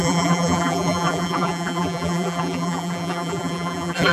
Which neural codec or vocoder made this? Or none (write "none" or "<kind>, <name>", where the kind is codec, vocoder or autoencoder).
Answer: vocoder, BigVGAN v2